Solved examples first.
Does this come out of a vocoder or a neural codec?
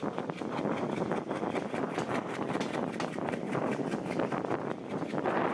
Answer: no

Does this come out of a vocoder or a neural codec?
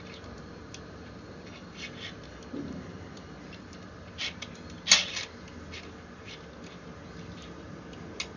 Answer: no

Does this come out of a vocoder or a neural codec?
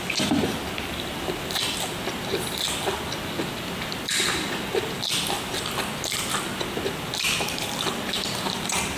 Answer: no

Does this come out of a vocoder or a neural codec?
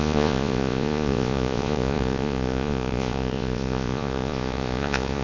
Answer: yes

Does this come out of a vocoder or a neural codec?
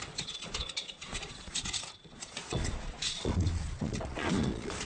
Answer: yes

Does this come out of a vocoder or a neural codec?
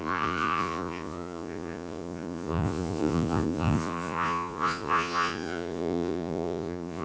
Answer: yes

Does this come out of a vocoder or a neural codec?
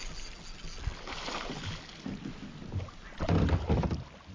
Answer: no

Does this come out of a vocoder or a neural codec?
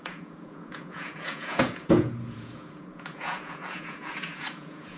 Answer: yes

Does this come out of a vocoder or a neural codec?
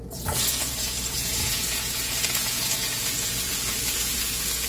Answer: yes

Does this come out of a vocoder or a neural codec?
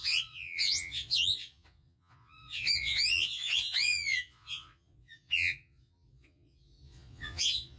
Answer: yes